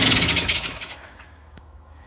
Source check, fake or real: fake